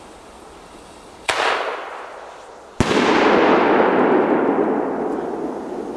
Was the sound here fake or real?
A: real